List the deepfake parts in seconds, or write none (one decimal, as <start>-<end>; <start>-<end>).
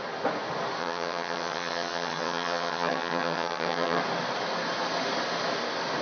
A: 0.8-4.0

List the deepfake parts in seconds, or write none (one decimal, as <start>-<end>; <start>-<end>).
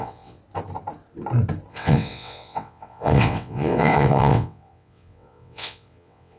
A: 0.0-0.4; 1.7-6.4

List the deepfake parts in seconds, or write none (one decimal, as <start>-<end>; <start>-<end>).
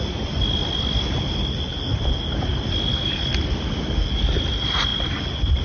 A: none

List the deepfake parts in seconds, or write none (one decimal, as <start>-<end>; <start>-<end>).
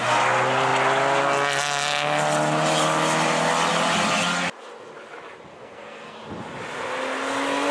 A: 5.5-6.2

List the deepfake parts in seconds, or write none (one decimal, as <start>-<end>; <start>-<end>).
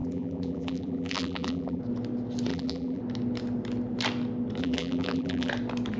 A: 0.0-1.8; 2.5-3.0; 4.6-5.5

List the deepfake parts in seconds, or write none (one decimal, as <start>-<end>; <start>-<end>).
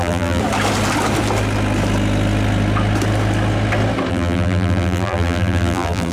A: 0.0-0.4; 4.1-6.1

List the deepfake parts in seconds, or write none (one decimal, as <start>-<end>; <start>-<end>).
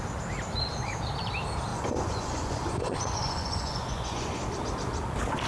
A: 1.7-4.4